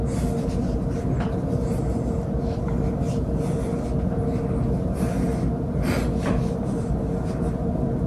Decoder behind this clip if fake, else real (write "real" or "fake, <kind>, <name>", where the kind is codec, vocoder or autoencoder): real